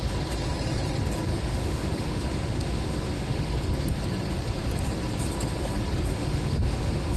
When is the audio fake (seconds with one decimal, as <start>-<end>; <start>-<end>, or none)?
1.3-3.5; 6.1-7.2